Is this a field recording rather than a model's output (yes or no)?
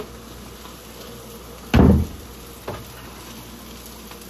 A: yes